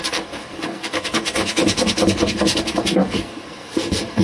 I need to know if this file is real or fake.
fake